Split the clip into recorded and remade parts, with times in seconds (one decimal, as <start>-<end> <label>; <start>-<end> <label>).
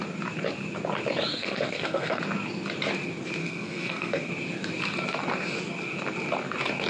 0.0-1.3 recorded; 1.3-2.2 remade; 2.2-3.4 recorded; 3.4-4.3 remade; 4.3-6.9 recorded